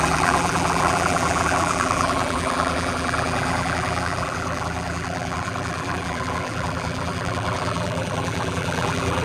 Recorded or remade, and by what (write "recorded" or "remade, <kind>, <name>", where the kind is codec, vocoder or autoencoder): remade, vocoder, BigVGAN v2